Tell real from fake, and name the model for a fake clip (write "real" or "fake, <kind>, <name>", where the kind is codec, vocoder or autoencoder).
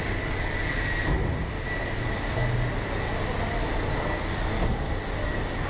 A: real